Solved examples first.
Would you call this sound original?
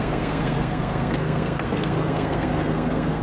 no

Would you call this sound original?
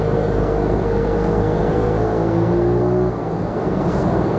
no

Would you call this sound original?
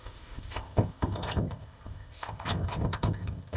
no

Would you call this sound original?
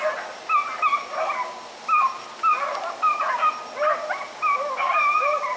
yes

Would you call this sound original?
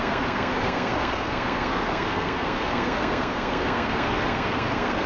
no